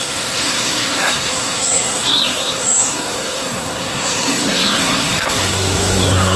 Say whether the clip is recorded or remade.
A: remade